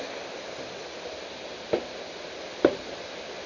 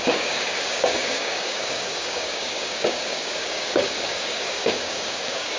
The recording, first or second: first